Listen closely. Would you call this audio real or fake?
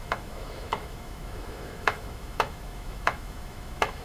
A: fake